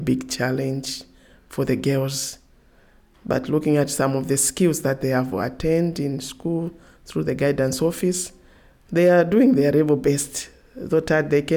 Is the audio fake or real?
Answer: real